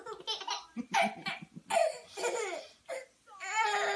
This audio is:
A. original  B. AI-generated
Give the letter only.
A